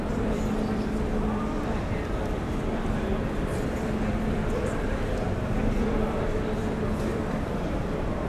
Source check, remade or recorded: remade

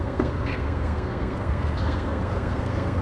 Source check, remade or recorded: remade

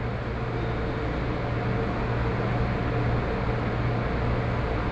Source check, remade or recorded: recorded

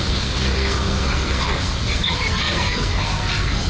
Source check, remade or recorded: remade